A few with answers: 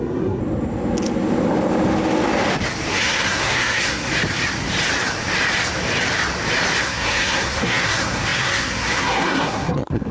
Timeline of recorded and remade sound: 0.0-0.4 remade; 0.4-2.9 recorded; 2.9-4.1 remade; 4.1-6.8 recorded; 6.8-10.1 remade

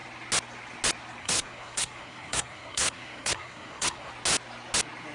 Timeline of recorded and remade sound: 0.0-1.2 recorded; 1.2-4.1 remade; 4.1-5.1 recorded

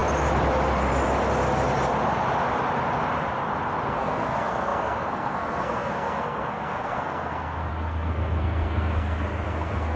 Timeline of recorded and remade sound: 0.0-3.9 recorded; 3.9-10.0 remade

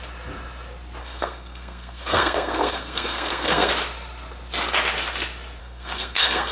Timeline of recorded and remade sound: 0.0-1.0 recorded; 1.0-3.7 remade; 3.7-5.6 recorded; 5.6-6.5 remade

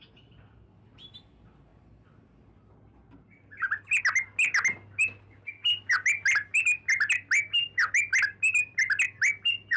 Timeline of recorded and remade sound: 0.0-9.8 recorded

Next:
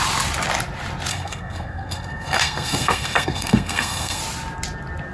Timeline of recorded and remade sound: 0.0-1.1 recorded; 1.1-4.2 remade; 4.2-5.1 recorded